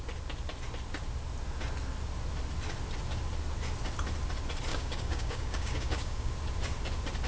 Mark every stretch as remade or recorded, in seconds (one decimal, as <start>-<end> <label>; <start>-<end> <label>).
0.0-4.7 recorded; 4.7-6.3 remade; 6.3-7.3 recorded